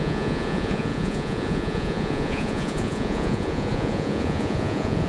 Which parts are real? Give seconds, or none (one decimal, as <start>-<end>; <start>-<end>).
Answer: none